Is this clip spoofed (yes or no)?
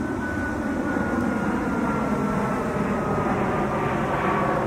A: no